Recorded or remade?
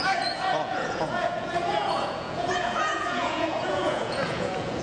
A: remade